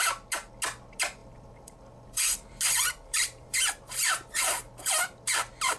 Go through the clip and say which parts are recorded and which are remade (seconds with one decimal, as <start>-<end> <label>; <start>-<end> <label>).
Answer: 0.0-1.2 recorded; 1.2-4.7 remade; 4.7-5.8 recorded